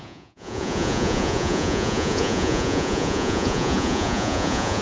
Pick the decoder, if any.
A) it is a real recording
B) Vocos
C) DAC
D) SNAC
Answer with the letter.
B